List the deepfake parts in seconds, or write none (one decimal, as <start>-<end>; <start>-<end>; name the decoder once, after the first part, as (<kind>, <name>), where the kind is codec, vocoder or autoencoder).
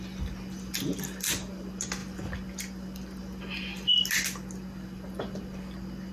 none